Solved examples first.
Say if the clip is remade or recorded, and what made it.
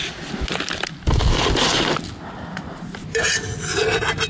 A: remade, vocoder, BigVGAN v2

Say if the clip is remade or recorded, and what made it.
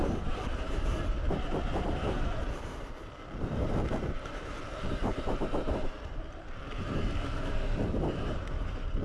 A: remade, vocoder, BigVGAN v2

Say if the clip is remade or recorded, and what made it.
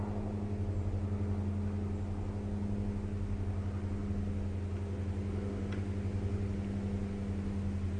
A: recorded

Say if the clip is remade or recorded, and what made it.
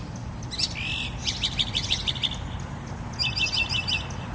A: recorded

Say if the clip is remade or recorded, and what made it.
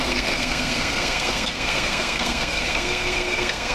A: remade, codec, SNAC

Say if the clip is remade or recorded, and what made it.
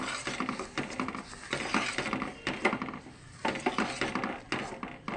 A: recorded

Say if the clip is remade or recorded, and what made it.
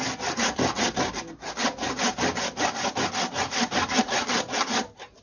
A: recorded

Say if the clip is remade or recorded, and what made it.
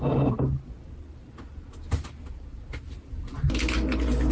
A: recorded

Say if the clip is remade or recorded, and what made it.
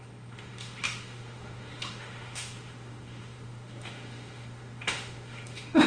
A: remade, autoencoder, DAC-VAE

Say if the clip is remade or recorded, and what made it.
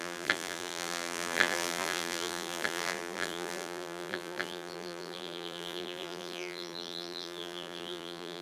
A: remade, vocoder, BigVGAN v2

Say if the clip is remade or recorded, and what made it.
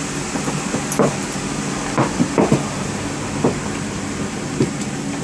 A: recorded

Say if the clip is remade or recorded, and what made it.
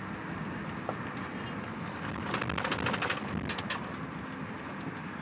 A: recorded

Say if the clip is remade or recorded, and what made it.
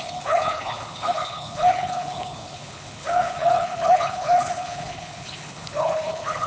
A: remade, codec, HILCodec